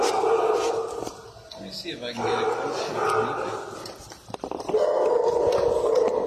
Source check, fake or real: real